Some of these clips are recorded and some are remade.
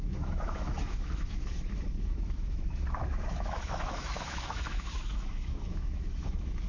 remade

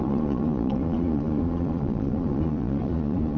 remade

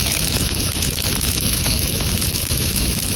remade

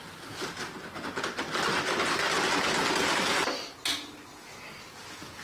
recorded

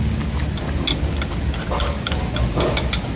recorded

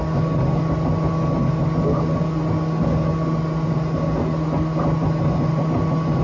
recorded